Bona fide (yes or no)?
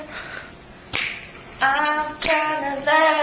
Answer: yes